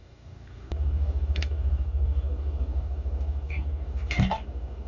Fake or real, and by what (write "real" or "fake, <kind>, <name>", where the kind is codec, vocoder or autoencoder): fake, codec, DAC